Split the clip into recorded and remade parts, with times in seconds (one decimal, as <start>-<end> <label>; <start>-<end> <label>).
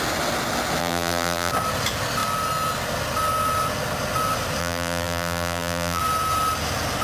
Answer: 0.0-0.8 recorded; 0.8-1.5 remade; 1.5-4.6 recorded; 4.6-6.0 remade; 6.0-7.0 recorded